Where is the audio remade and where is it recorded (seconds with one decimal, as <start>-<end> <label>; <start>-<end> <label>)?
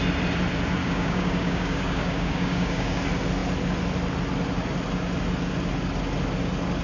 0.0-0.8 recorded; 0.8-3.0 remade; 3.0-6.8 recorded